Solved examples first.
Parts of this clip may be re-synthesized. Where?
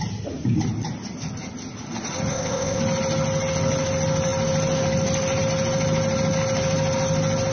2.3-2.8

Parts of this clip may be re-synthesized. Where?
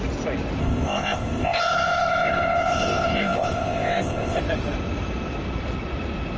0.6-4.4